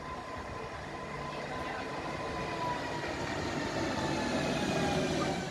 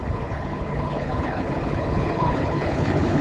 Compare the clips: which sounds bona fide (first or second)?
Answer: first